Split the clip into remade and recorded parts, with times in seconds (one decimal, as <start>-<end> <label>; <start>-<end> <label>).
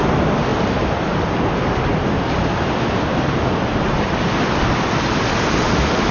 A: 0.0-6.1 recorded